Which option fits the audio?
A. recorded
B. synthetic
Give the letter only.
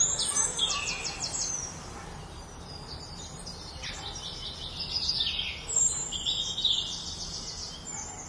A